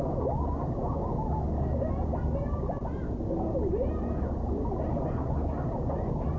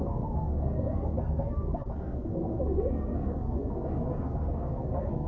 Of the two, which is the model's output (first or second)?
second